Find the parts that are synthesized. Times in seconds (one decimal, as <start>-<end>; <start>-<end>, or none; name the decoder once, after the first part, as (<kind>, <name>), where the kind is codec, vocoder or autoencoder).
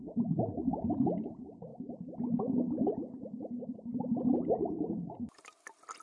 none